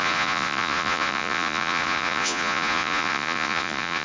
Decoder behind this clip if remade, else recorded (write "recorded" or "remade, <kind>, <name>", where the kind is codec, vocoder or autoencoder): remade, vocoder, Vocos